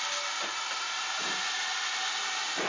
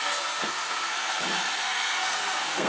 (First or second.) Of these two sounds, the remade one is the second